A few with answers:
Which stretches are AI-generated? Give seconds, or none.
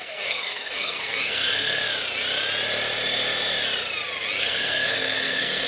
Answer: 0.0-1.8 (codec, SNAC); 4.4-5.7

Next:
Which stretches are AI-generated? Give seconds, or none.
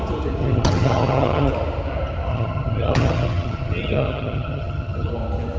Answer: 0.4-1.5 (vocoder, HiFi-GAN); 2.3-5.1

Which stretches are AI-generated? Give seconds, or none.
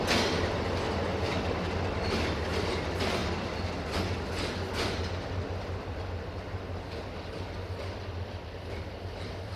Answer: none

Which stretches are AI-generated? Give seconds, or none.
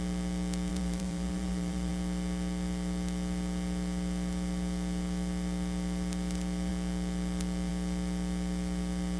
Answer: 0.7-1.9 (vocoder, BigVGAN v2)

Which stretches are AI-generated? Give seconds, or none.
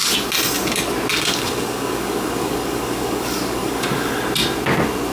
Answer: 1.1-4.2 (codec, DAC)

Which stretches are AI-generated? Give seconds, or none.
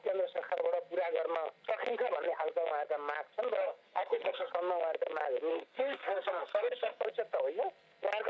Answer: 3.6-4.5 (codec, SNAC); 5.5-7.0